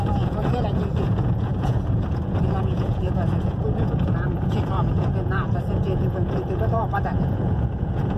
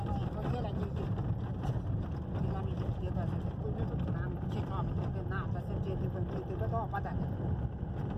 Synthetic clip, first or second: first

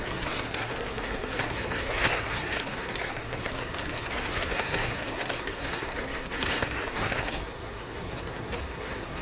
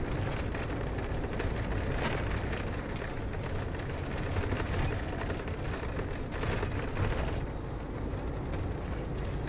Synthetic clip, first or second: first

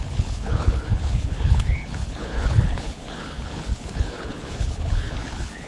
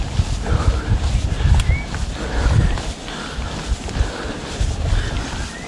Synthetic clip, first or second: first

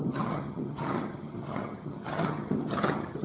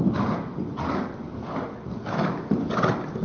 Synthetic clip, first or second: first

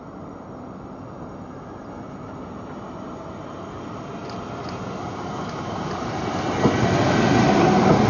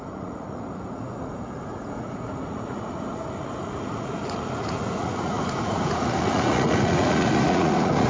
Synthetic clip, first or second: second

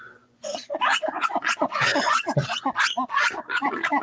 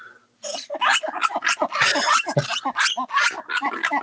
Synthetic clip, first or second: first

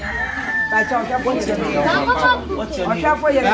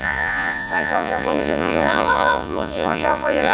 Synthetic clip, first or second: second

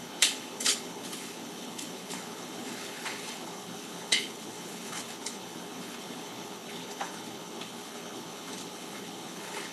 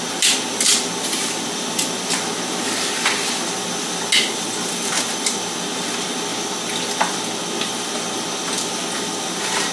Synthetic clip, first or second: first